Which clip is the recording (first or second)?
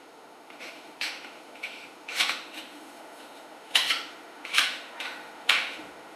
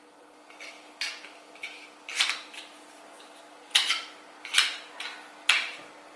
second